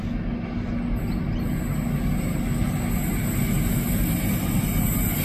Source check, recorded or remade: recorded